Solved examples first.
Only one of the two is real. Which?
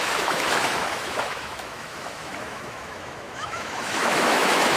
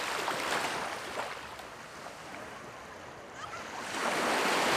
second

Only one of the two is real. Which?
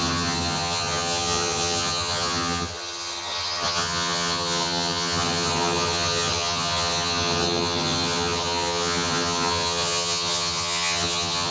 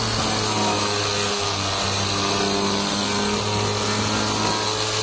second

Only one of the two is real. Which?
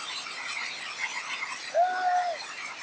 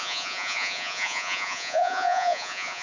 first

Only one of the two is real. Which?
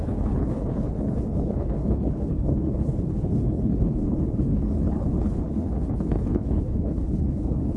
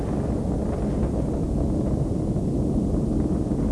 second